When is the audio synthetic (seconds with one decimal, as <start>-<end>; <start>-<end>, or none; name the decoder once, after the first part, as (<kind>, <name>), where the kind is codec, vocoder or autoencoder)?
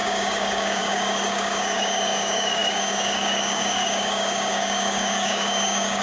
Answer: 0.0-6.0 (codec, DAC)